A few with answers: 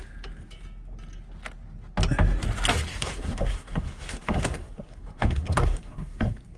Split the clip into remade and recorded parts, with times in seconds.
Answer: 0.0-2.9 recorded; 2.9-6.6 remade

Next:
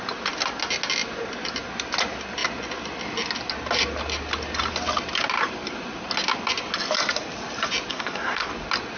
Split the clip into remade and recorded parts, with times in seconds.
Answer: 0.0-7.9 recorded; 7.9-8.5 remade; 8.5-9.0 recorded

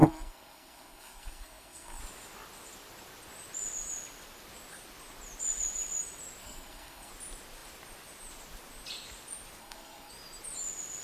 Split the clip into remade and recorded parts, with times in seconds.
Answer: 0.0-2.0 remade; 2.0-6.4 recorded; 6.4-7.1 remade; 7.1-9.6 recorded; 9.6-10.1 remade; 10.1-11.0 recorded